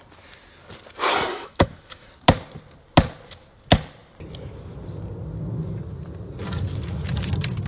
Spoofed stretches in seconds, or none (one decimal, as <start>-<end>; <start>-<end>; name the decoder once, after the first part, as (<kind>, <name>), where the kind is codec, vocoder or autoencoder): 1.3-2.1 (autoencoder, DAC-VAE)